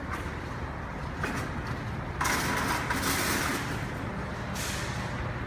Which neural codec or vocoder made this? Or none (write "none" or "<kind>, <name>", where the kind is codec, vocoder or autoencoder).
none